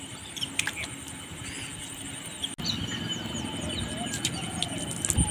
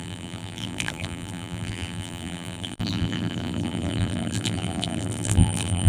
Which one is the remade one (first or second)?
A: second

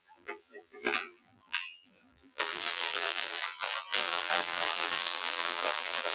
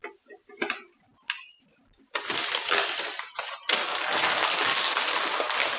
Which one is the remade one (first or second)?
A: first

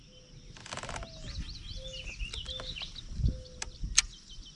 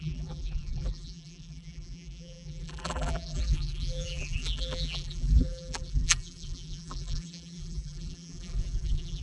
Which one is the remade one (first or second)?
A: second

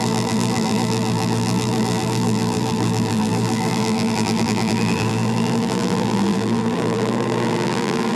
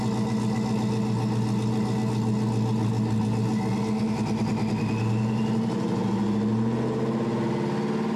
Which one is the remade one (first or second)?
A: first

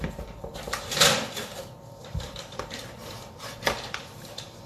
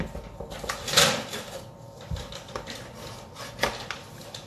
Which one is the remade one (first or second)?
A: first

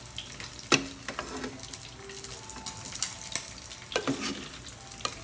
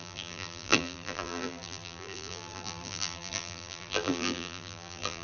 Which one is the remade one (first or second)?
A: second